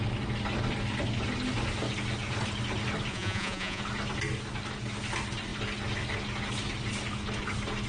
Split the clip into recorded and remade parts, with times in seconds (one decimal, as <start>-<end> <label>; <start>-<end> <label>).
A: 0.0-3.1 recorded; 3.1-3.8 remade; 3.8-7.9 recorded